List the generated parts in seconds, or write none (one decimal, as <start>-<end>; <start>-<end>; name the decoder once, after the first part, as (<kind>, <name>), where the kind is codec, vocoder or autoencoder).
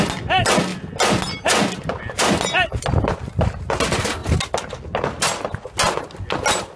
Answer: none